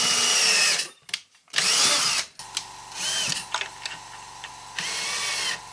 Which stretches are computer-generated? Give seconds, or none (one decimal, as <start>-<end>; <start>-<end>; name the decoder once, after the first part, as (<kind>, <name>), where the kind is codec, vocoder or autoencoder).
none